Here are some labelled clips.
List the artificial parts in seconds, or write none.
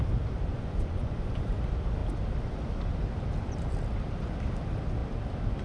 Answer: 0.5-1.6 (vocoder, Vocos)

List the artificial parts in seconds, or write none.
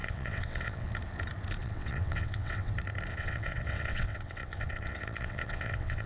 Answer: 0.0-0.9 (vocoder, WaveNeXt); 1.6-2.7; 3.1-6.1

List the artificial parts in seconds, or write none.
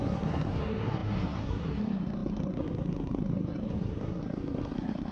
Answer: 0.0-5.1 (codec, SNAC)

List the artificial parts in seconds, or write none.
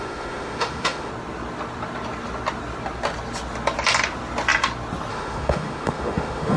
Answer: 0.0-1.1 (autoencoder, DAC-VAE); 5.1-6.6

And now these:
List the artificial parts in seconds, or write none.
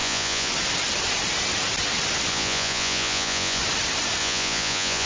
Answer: 0.0-0.5 (vocoder, Vocos); 2.3-3.6; 4.2-5.1